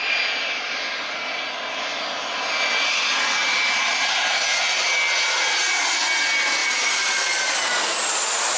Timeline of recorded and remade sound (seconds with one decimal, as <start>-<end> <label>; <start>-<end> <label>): 0.0-3.4 recorded; 3.4-4.4 remade; 4.4-6.6 recorded; 6.6-7.4 remade; 7.4-8.6 recorded